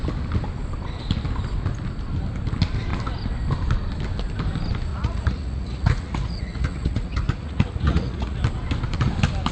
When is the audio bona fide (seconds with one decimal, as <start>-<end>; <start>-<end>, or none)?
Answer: 0.0-4.9; 8.4-9.5